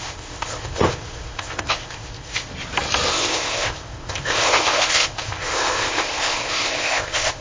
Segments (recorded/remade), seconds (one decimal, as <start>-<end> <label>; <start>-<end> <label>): 0.0-2.5 remade; 2.5-3.1 recorded; 3.1-7.4 remade